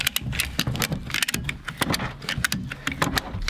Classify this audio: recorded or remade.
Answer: recorded